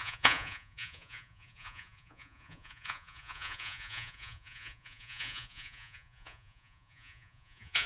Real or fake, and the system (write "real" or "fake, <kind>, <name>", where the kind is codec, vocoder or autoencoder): fake, vocoder, Vocos